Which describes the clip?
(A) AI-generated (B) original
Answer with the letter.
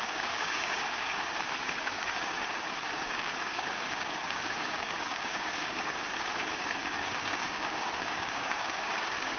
A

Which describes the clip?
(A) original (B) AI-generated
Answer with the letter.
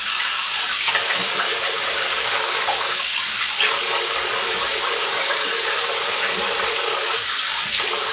B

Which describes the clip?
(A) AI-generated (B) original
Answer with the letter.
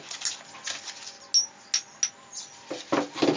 B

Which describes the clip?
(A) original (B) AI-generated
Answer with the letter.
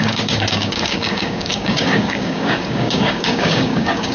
B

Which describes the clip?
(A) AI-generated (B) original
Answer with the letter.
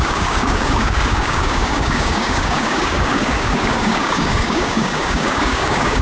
A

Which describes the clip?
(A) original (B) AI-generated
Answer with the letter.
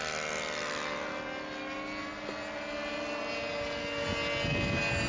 A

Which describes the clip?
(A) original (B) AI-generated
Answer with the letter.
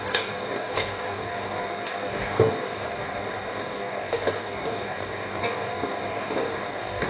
B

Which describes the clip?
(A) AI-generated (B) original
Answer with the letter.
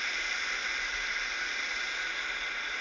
B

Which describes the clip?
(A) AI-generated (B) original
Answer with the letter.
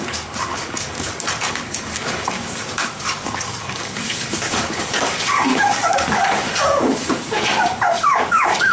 A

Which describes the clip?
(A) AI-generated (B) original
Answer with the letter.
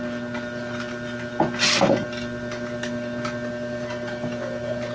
B